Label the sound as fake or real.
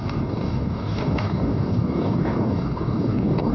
fake